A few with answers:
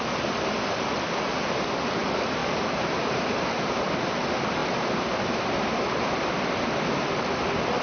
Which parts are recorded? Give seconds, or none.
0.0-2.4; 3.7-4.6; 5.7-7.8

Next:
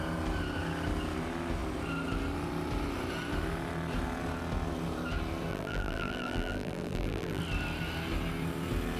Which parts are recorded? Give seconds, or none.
0.0-5.5; 7.4-9.0

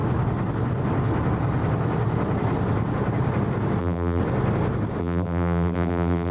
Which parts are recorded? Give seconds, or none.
0.0-3.8; 4.2-5.0

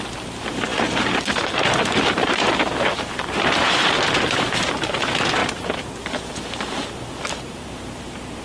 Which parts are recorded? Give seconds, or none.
5.4-6.6

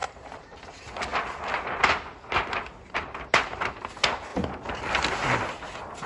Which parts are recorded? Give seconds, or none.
0.6-4.3; 4.8-6.1

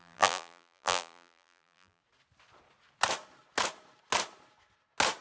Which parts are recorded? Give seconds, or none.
2.0-5.2

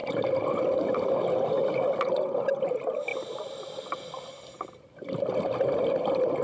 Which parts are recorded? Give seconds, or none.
1.1-3.1; 4.2-6.4